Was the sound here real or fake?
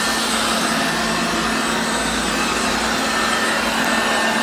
real